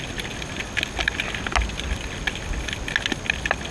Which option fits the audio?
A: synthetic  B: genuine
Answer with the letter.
B